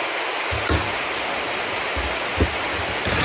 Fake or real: real